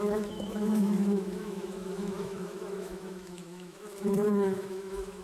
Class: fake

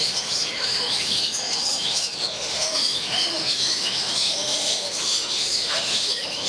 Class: fake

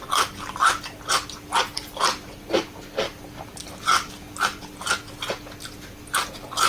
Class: real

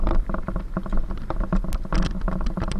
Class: real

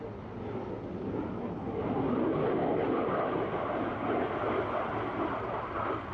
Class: real